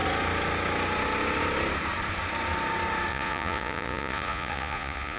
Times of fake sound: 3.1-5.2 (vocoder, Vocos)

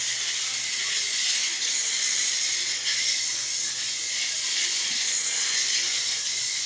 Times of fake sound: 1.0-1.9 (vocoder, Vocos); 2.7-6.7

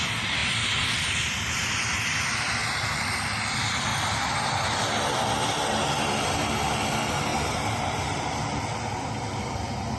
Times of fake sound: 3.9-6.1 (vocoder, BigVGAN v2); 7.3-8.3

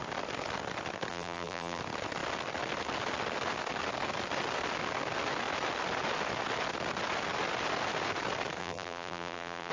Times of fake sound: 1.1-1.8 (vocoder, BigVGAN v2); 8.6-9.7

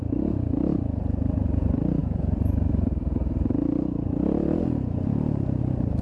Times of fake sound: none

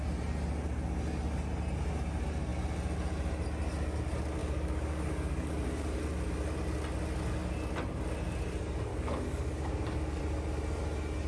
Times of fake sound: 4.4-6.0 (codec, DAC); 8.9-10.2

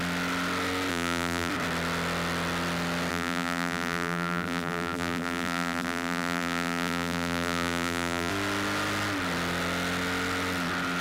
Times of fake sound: 0.9-1.5 (vocoder, BigVGAN v2); 3.1-8.3

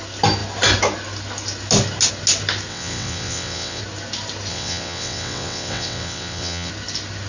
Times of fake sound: 2.7-3.8 (vocoder, WaveNeXt); 4.5-6.7